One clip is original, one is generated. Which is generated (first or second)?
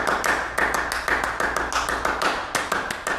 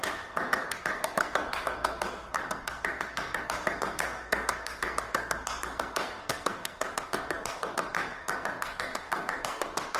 second